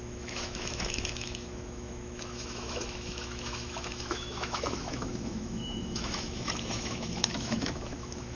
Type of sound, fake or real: fake